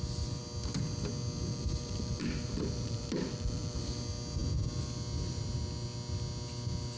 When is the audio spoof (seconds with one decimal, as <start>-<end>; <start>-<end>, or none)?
1.5-3.9